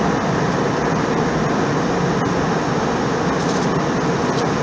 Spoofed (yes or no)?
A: no